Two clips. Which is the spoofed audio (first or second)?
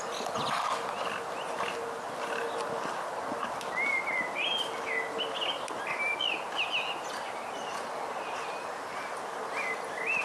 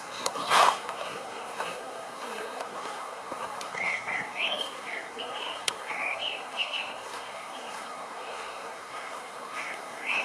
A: second